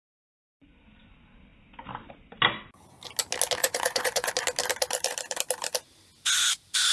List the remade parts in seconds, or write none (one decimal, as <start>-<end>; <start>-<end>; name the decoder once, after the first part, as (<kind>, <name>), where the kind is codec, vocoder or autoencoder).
3.6-4.3 (vocoder, Vocos)